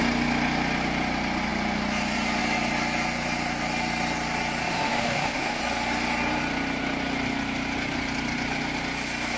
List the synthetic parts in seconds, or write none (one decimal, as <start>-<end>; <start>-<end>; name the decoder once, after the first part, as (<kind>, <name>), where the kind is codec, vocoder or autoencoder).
4.6-5.6 (autoencoder, DAC-VAE)